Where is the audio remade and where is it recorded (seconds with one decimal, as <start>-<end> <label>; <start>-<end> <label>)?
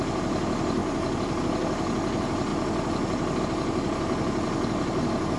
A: 0.0-5.4 recorded